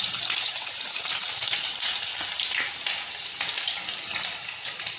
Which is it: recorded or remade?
recorded